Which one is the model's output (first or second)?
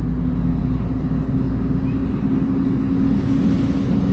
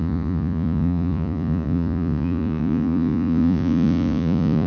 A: second